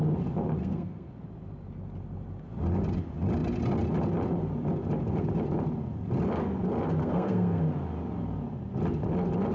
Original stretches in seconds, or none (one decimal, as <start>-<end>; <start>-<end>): 0.0-0.6; 1.1-7.0; 7.6-9.5